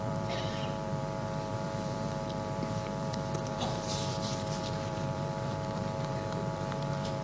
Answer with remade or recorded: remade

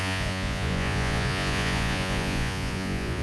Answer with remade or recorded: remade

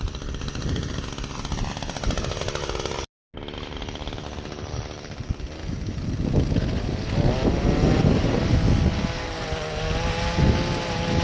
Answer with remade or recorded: recorded